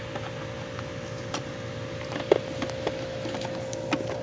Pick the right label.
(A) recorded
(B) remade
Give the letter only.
A